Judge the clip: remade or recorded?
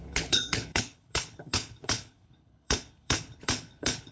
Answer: remade